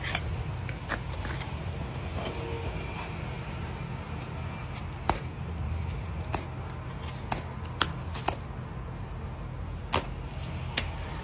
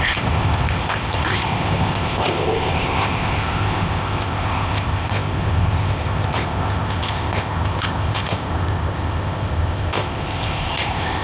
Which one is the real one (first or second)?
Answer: first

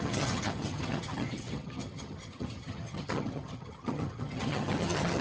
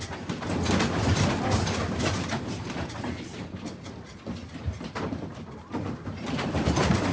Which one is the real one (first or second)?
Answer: second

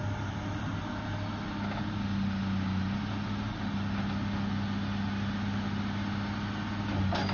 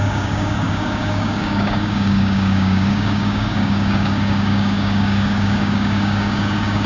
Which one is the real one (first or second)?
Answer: first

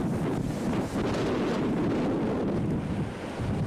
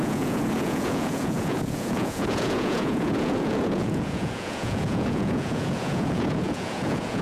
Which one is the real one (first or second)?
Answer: first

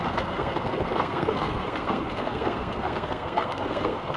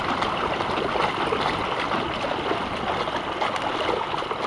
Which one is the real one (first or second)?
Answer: second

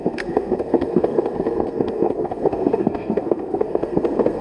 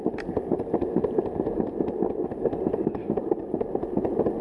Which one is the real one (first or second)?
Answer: second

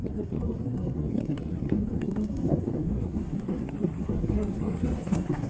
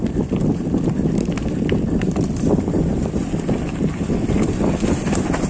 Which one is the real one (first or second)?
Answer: second